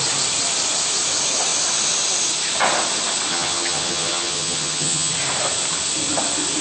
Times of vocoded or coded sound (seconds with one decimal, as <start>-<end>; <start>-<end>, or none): 3.3-5.1